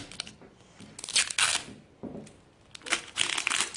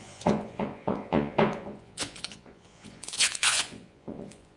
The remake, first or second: second